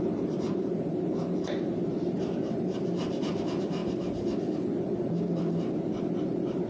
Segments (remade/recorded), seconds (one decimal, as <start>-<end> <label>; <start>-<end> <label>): 0.0-3.8 remade; 3.8-6.1 recorded; 6.1-6.7 remade